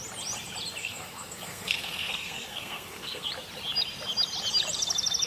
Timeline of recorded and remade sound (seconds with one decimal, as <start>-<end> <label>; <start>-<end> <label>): 0.0-0.8 recorded; 0.8-3.3 remade; 3.3-5.3 recorded